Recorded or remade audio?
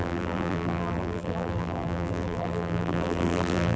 remade